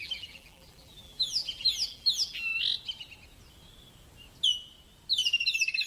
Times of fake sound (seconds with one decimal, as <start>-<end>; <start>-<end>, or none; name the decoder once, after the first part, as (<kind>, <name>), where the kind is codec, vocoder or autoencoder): 0.0-2.5 (vocoder, BigVGAN v2)